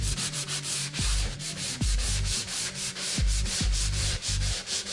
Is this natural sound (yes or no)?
no